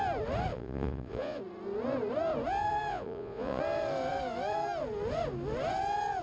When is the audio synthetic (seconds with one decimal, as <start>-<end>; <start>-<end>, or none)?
0.5-1.4; 2.9-3.6